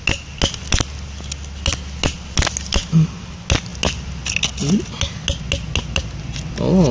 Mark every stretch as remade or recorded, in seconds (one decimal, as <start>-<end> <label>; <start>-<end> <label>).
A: 0.0-6.9 recorded